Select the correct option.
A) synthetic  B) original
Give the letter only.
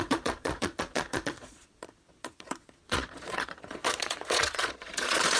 A